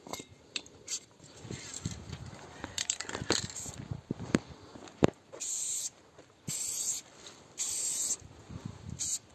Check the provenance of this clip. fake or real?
fake